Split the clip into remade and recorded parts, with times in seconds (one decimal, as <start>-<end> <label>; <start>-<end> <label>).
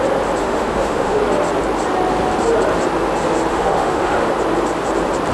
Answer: 0.0-0.4 recorded; 0.4-1.2 remade; 1.2-3.5 recorded; 3.5-4.3 remade; 4.3-5.3 recorded